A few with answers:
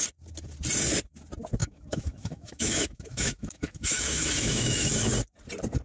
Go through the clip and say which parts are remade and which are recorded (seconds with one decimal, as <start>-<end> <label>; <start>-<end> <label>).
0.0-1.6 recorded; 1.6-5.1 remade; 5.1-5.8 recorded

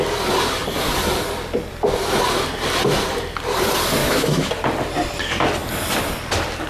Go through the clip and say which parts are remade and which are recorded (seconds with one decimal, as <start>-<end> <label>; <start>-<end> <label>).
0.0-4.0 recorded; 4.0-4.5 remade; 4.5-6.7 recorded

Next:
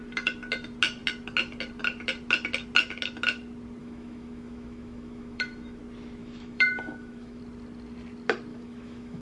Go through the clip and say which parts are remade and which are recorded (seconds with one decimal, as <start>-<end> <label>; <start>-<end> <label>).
0.0-3.8 recorded; 3.8-5.8 remade; 5.8-6.2 recorded; 6.2-7.4 remade; 7.4-8.5 recorded; 8.5-9.2 remade

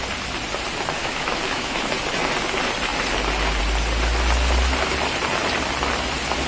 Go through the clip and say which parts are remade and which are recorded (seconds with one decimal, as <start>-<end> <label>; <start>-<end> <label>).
0.0-1.0 recorded; 1.0-1.9 remade; 1.9-6.5 recorded

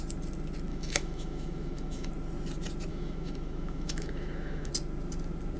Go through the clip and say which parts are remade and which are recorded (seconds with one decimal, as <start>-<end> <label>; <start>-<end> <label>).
0.0-0.7 recorded; 0.7-2.1 remade; 2.1-2.9 recorded; 2.9-4.7 remade; 4.7-5.6 recorded

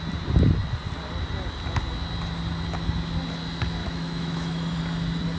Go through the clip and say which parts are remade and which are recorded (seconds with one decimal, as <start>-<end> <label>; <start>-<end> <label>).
0.0-3.8 recorded; 3.8-4.8 remade; 4.8-5.4 recorded